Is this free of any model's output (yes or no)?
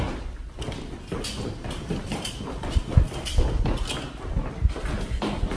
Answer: yes